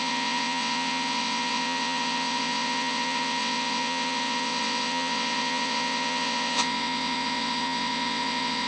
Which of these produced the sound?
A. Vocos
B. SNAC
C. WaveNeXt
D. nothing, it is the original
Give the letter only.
C